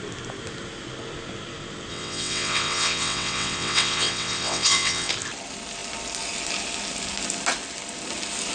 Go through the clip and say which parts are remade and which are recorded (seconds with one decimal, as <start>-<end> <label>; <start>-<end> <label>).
0.0-1.9 recorded; 1.9-5.1 remade; 5.1-8.5 recorded